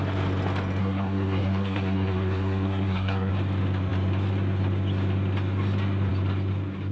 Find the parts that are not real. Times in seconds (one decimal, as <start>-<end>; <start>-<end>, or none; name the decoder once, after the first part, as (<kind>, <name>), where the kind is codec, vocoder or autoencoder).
0.8-3.3 (codec, SNAC)